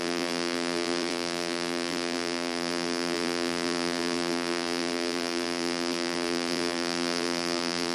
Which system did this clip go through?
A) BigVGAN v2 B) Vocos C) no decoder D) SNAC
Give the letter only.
A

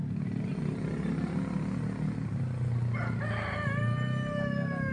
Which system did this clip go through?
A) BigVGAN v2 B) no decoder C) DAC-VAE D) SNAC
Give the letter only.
B